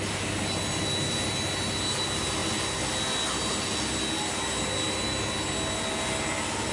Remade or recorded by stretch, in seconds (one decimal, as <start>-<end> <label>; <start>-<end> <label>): 0.0-6.7 recorded